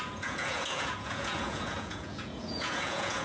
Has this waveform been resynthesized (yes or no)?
yes